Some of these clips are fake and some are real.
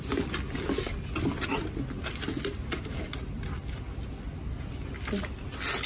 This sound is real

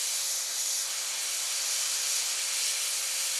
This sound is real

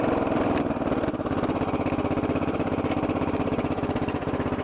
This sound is real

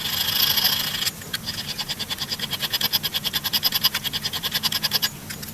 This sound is real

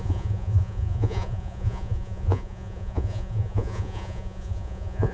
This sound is fake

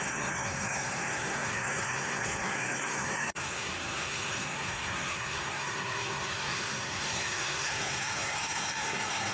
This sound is fake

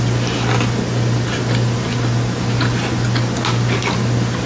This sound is real